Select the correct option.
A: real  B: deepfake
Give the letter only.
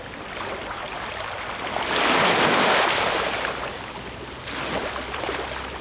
A